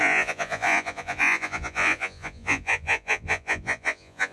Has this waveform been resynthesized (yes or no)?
yes